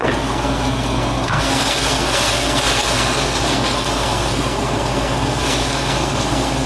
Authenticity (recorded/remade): remade